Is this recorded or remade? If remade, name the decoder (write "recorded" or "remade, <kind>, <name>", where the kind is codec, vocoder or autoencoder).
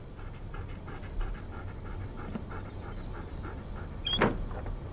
recorded